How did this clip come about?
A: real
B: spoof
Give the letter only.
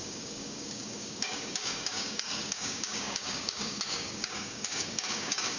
B